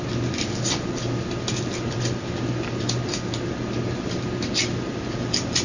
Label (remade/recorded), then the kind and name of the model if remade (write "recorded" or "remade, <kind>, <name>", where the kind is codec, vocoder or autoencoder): recorded